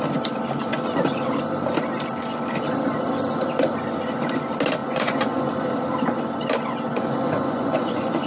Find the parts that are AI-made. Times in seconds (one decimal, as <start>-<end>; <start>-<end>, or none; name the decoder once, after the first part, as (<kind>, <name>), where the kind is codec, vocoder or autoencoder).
4.8-5.5 (vocoder, Vocos); 6.9-8.3